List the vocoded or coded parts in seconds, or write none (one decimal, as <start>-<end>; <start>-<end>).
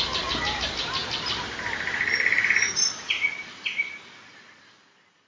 none